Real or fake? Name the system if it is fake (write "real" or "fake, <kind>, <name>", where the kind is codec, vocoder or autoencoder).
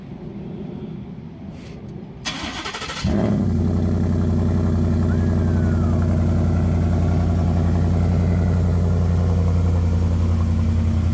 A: real